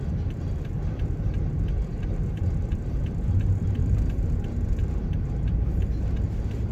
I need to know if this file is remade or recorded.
remade